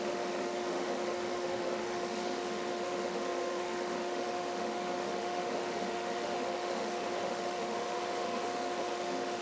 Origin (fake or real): fake